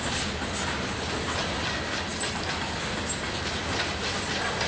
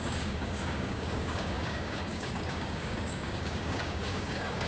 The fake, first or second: second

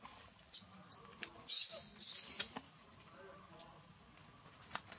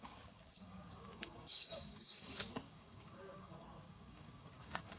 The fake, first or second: second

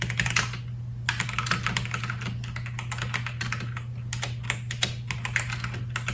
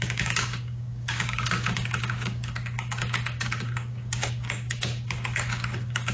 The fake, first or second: second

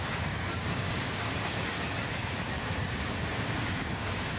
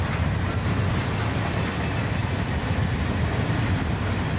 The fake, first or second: first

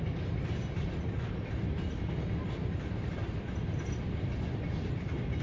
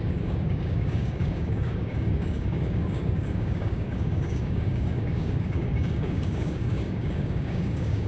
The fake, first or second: second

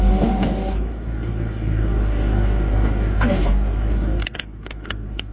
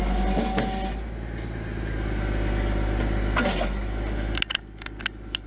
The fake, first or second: first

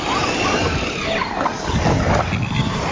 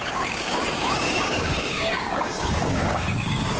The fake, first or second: second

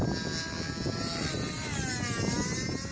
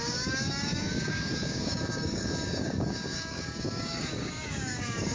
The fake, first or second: second